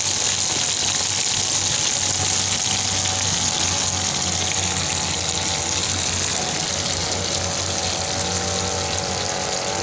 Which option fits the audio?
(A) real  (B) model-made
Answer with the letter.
A